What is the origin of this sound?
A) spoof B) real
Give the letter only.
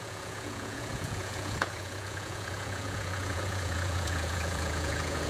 A